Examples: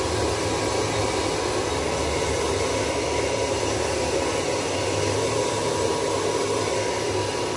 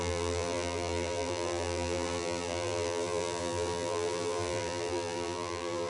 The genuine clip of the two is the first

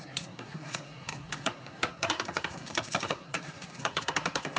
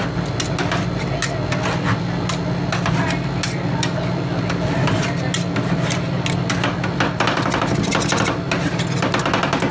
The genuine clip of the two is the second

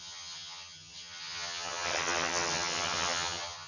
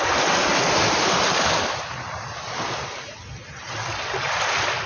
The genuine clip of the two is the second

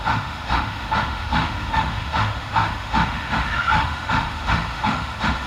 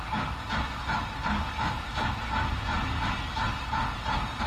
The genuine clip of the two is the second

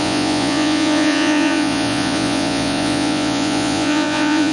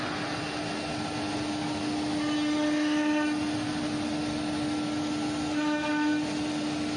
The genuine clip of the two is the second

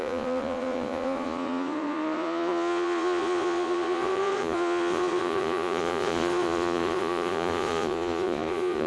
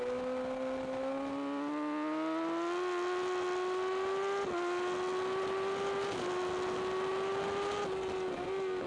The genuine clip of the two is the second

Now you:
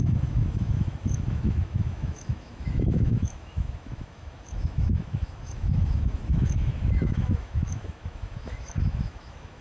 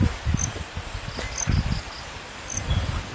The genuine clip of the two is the second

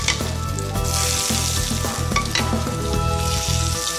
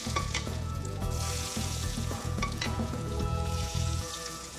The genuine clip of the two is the first